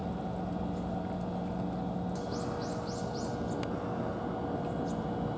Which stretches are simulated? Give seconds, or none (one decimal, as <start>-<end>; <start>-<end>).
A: none